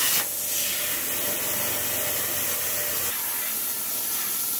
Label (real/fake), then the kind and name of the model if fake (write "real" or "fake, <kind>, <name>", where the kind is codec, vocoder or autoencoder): real